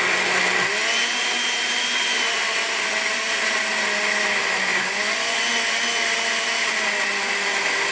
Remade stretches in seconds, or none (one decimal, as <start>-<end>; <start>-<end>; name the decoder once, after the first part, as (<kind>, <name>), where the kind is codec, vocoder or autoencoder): 4.7-5.5 (vocoder, Vocos)